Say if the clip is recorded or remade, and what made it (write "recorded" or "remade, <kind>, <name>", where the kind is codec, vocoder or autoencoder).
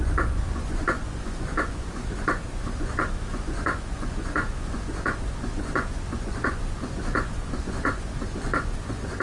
remade, vocoder, Vocos